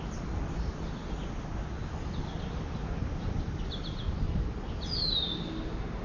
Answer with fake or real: real